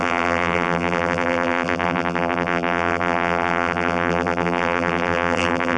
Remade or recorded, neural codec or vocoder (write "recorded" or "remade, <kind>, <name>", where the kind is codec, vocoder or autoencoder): remade, vocoder, BigVGAN v2